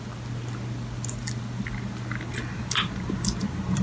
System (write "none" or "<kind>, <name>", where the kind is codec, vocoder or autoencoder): none